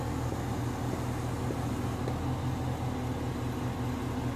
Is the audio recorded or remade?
recorded